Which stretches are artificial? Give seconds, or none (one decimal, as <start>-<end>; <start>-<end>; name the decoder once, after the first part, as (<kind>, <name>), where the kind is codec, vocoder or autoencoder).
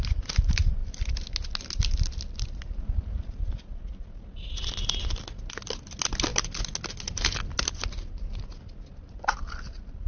none